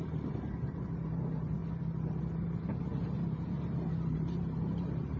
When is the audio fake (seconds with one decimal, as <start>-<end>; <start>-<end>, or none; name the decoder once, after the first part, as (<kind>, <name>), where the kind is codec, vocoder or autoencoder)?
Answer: 0.0-1.6 (vocoder, BigVGAN v2); 2.2-5.2